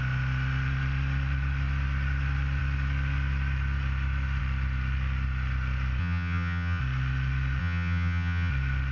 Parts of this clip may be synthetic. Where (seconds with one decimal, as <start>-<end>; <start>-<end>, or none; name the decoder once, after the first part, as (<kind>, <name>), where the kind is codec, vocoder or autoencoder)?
6.0-6.8 (vocoder, HiFi-GAN); 7.6-8.5